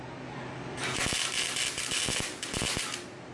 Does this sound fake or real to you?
real